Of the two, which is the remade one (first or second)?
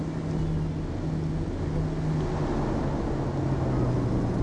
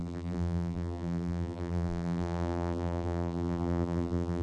second